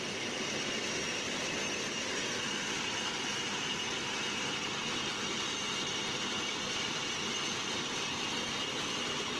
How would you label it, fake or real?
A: real